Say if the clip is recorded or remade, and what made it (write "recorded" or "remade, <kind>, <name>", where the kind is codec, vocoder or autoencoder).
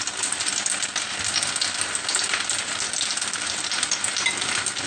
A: recorded